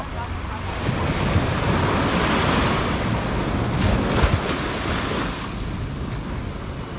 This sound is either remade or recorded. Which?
recorded